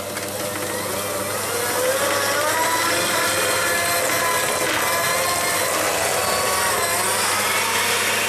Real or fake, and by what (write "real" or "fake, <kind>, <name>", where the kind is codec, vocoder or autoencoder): real